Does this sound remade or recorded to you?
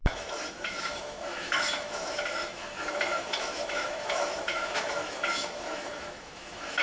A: remade